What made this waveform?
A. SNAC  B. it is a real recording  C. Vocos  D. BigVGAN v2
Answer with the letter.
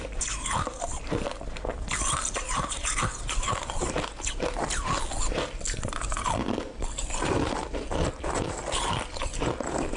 D